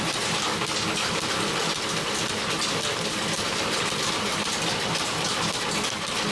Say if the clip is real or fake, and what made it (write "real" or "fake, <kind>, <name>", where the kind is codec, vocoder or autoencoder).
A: real